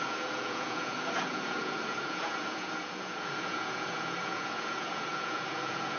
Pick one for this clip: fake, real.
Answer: fake